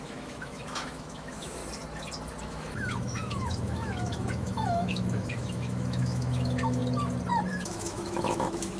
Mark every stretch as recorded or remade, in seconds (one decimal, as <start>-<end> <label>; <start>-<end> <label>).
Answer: 0.0-1.6 remade; 1.6-2.4 recorded; 2.4-6.8 remade; 6.8-7.5 recorded; 7.5-8.8 remade